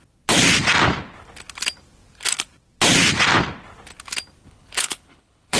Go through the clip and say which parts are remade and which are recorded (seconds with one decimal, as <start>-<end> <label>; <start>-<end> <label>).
0.0-4.4 recorded; 4.4-5.6 remade